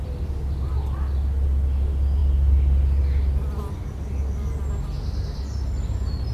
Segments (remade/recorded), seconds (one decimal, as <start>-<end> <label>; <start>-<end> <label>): 0.0-6.3 recorded

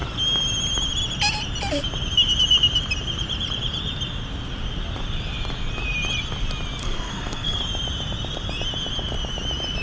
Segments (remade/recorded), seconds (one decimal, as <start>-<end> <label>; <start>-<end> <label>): 0.0-6.8 recorded; 6.8-7.6 remade; 7.6-9.8 recorded

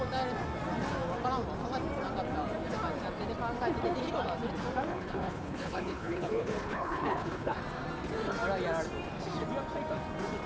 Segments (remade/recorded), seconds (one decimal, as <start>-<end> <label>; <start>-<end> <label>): 0.0-4.9 recorded; 4.9-7.6 remade; 7.6-10.5 recorded

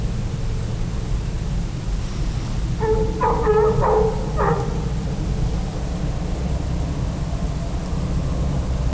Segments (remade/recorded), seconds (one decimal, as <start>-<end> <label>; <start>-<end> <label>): 0.0-8.9 recorded

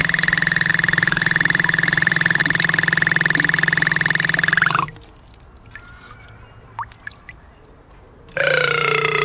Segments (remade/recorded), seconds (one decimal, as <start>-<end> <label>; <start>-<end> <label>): 0.0-2.4 remade; 2.4-7.2 recorded; 7.2-9.2 remade

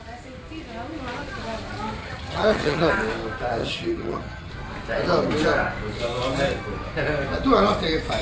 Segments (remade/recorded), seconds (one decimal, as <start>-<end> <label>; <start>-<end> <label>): 0.0-2.0 recorded; 2.0-2.9 remade; 2.9-3.6 recorded; 3.6-4.5 remade; 4.5-8.2 recorded

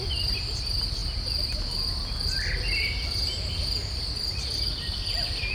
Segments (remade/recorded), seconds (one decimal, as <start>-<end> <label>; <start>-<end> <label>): 0.0-5.5 recorded